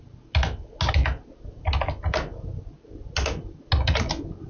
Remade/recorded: recorded